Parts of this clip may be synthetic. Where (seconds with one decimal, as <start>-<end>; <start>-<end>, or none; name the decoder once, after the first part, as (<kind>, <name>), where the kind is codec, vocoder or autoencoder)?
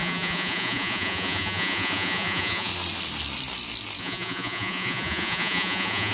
0.0-2.7 (vocoder, Vocos); 4.0-6.1